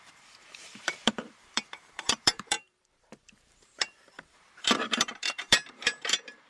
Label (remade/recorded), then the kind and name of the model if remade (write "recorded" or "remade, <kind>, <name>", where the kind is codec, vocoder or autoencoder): remade, vocoder, BigVGAN v2